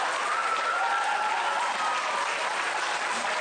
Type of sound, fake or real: real